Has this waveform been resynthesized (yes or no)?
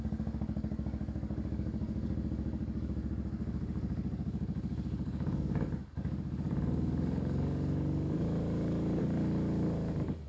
yes